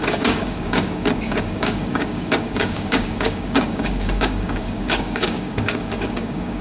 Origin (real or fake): fake